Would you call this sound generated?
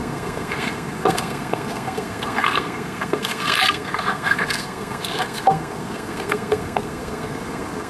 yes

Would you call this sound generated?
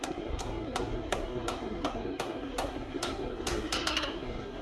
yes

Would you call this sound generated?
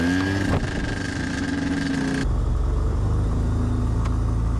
no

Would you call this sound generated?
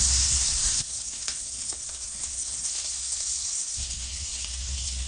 yes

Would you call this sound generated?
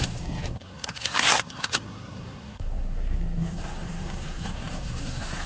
yes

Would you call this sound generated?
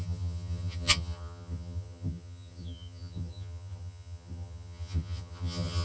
yes